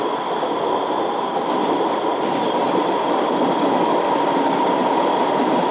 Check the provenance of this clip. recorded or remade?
recorded